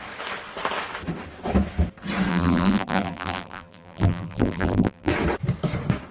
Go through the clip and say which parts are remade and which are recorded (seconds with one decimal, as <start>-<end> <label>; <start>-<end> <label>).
0.0-2.3 recorded; 2.3-5.1 remade; 5.1-6.1 recorded

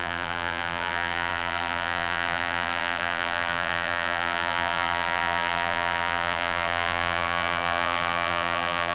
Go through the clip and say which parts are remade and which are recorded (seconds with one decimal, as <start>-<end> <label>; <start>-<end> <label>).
0.0-8.9 remade